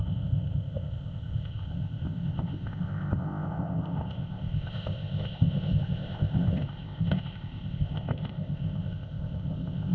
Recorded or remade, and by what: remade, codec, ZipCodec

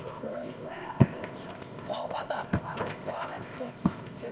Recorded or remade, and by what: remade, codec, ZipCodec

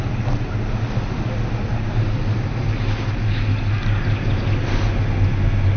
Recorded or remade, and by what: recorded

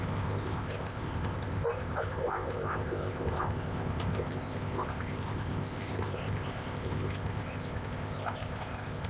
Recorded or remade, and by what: remade, codec, ZipCodec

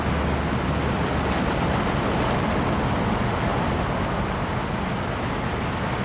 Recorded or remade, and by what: recorded